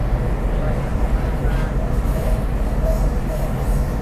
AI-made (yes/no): no